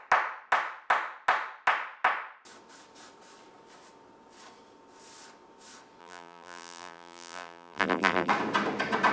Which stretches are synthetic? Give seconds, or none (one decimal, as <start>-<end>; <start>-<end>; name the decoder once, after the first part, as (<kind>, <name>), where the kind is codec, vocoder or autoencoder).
6.0-8.3 (vocoder, BigVGAN v2)